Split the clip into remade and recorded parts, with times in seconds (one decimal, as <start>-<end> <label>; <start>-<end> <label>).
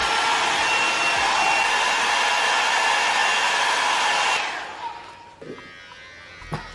0.0-3.2 recorded; 3.2-4.8 remade; 4.8-6.7 recorded